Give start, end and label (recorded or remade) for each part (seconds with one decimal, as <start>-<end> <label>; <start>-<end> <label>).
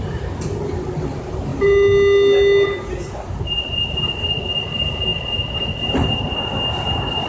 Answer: 0.0-7.3 recorded